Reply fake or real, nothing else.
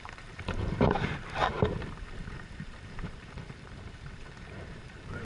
fake